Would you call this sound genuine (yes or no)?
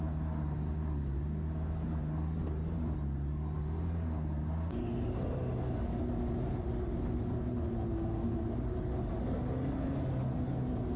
yes